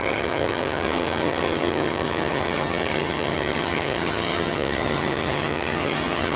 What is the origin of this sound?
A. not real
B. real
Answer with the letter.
A